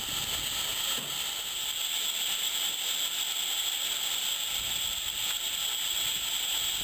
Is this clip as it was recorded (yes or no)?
yes